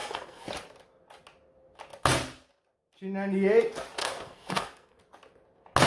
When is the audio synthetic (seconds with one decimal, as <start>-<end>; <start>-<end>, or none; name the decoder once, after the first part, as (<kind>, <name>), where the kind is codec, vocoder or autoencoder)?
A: 0.0-0.5 (codec, SNAC); 4.0-5.0